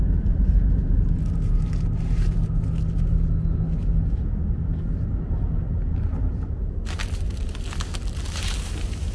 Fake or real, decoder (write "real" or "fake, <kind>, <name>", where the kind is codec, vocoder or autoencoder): real